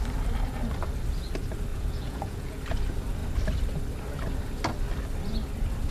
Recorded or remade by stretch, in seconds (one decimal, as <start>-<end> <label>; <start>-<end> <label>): 0.0-1.7 recorded; 1.7-2.6 remade; 2.6-5.9 recorded